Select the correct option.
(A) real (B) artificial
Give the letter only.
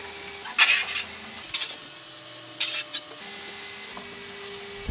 A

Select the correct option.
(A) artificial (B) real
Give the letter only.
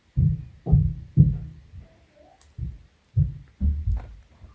B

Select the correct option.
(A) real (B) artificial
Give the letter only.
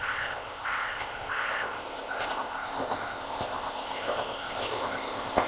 B